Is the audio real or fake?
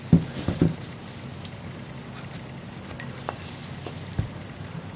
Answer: real